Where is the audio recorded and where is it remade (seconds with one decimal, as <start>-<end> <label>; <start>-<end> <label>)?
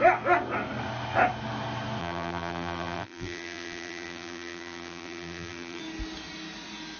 0.0-2.0 recorded; 2.0-5.8 remade; 5.8-7.0 recorded